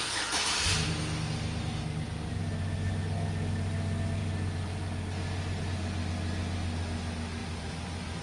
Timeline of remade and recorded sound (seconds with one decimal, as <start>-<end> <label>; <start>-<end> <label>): 0.0-7.4 recorded; 7.4-8.2 remade